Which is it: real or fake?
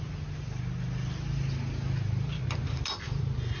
real